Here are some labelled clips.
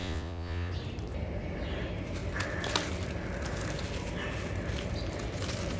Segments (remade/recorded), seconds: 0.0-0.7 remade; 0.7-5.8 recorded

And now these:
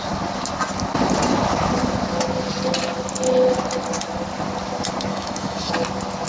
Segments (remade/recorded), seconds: 0.0-5.1 recorded; 5.1-5.7 remade; 5.7-6.3 recorded

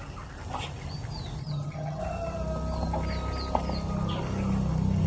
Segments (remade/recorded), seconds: 0.0-1.4 recorded; 1.4-2.0 remade; 2.0-5.1 recorded

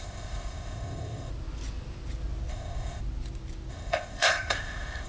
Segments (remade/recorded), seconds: 0.0-1.3 remade; 1.3-2.5 recorded; 2.5-3.0 remade; 3.0-3.7 recorded; 3.7-5.1 remade

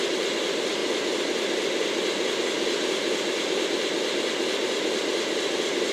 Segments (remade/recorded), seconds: 0.0-5.9 recorded

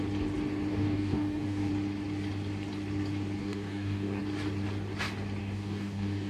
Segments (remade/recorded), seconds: 0.0-0.7 recorded; 0.7-1.7 remade; 1.7-3.4 recorded; 3.4-4.2 remade; 4.2-5.4 recorded; 5.4-6.3 remade

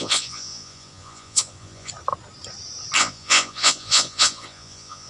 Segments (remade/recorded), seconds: 0.0-1.9 remade; 1.9-3.0 recorded; 3.0-5.1 remade

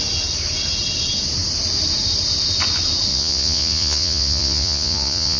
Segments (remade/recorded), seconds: 0.0-3.1 recorded; 3.1-5.4 remade